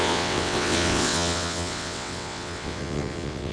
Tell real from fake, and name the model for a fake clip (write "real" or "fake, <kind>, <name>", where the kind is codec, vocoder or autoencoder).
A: fake, vocoder, WaveNeXt